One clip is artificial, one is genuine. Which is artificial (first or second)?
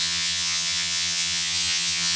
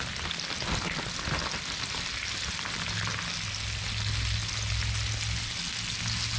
first